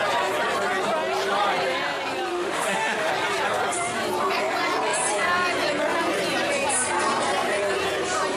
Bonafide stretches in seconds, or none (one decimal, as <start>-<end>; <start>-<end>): 0.0-2.3; 3.1-8.4